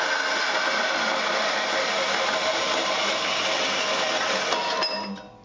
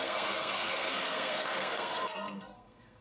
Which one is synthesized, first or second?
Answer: second